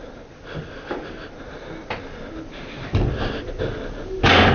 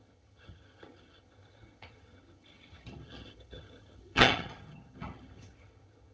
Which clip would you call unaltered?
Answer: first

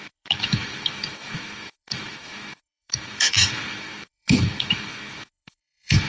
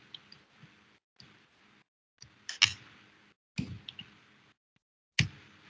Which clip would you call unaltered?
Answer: second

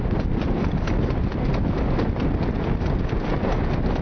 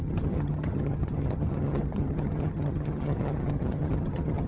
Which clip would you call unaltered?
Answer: first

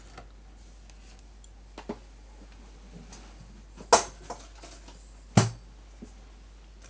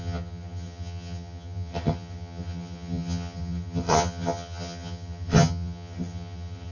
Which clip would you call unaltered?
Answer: first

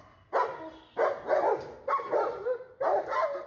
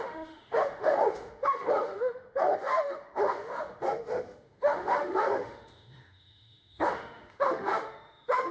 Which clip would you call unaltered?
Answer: first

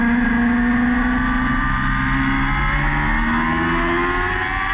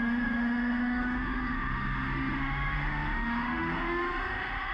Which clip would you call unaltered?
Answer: first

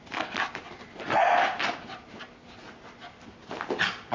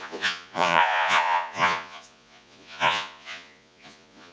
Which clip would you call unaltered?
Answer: first